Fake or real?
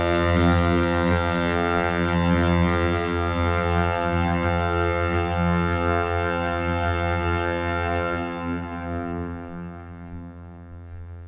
fake